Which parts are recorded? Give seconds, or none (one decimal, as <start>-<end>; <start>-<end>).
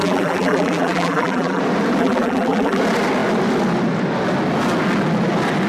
1.6-2.0; 2.8-5.7